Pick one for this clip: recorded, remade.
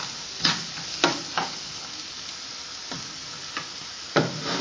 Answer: recorded